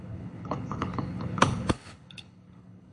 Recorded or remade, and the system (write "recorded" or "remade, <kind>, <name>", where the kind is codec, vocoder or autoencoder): remade, codec, HILCodec